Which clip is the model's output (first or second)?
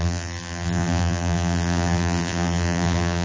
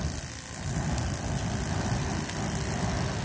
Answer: first